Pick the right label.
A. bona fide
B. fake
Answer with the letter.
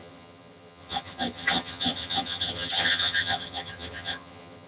B